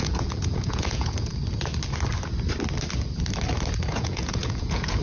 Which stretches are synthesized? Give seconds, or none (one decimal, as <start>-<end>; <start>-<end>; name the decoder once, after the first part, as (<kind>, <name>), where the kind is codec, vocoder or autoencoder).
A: 0.0-1.3 (vocoder, Vocos); 3.9-5.0